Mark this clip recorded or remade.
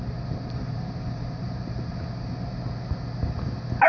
recorded